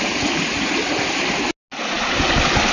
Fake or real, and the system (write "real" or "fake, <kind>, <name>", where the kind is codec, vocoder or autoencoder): real